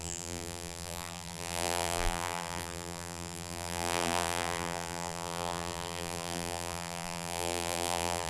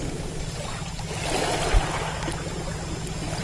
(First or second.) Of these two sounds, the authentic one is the second